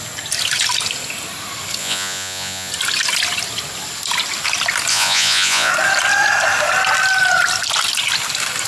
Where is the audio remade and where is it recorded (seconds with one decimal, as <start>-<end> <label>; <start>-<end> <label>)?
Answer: 0.0-1.8 recorded; 1.8-2.7 remade; 2.7-4.9 recorded; 4.9-5.7 remade; 5.7-8.7 recorded